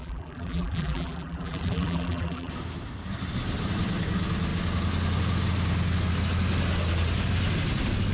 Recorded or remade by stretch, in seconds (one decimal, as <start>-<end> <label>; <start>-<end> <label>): 0.0-2.5 remade; 2.5-8.1 recorded